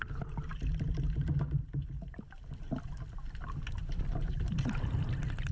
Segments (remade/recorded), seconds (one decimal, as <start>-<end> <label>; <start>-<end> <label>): 0.0-5.5 recorded